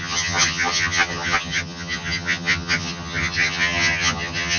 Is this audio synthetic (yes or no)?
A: yes